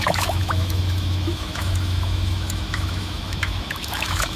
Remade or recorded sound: remade